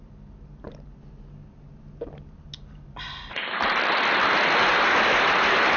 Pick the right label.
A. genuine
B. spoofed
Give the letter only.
A